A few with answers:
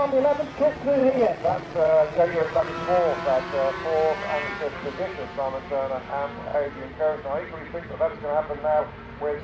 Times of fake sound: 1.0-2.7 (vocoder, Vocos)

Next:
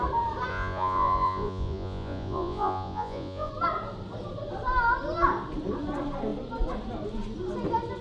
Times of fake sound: 0.5-3.5 (vocoder, Vocos)

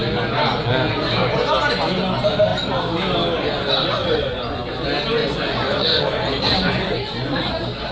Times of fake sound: 4.0-4.6 (vocoder, Vocos); 5.2-7.5